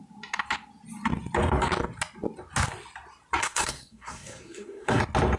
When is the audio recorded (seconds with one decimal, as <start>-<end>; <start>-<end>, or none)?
0.0-3.4; 5.0-5.4